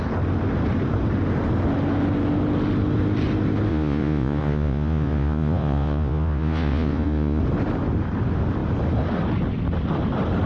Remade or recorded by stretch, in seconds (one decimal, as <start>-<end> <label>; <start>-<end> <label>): 0.0-3.7 recorded; 3.7-7.4 remade; 7.4-10.5 recorded